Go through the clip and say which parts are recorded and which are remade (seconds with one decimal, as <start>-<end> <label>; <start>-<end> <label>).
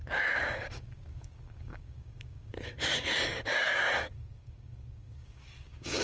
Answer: 0.0-6.0 remade